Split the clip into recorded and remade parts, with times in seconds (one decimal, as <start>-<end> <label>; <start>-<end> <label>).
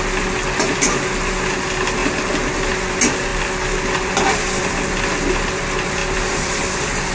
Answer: 0.0-3.3 recorded; 3.3-4.6 remade; 4.6-6.0 recorded; 6.0-7.1 remade